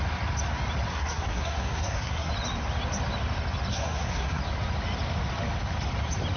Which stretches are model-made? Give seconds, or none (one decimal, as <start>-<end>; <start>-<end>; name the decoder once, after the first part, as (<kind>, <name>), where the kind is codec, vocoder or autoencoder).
0.9-2.3 (codec, SNAC); 3.7-4.4